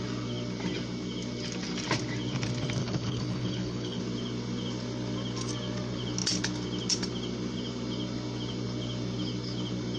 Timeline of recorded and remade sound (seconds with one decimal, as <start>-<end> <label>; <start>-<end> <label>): 0.0-2.8 recorded; 2.8-4.0 remade; 4.0-10.0 recorded

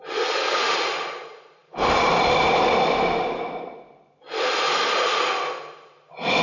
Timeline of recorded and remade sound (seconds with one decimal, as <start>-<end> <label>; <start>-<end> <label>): 0.0-1.6 recorded; 1.6-5.0 remade; 5.0-6.4 recorded

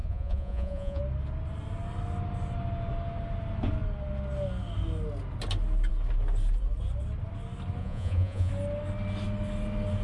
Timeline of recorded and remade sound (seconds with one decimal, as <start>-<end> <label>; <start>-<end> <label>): 0.0-1.0 remade; 1.0-7.8 recorded; 7.8-8.5 remade; 8.5-10.0 recorded

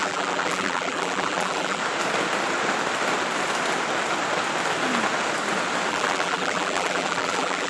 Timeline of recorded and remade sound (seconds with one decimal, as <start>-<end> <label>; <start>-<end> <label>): 0.0-1.8 remade; 1.8-5.9 recorded; 5.9-7.7 remade

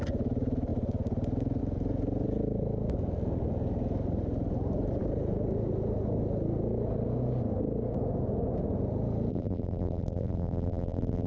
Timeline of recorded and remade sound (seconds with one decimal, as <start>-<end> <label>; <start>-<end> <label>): 0.0-9.3 recorded; 9.3-11.3 remade

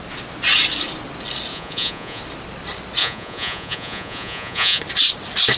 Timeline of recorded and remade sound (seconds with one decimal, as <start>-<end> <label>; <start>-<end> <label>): 0.0-1.5 recorded; 1.5-2.2 remade; 2.2-3.0 recorded; 3.0-4.8 remade; 4.8-5.6 recorded